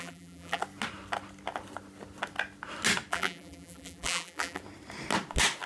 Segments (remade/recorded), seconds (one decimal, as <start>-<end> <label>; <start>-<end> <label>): 0.0-0.6 remade; 0.6-3.1 recorded; 3.1-4.6 remade; 4.6-5.7 recorded